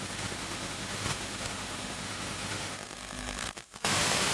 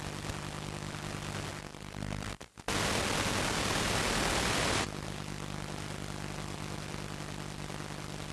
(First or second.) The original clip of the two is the second